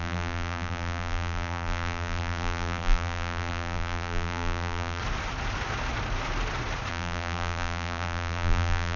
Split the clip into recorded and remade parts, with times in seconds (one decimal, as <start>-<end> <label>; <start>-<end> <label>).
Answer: 0.0-5.0 remade; 5.0-6.9 recorded; 6.9-9.0 remade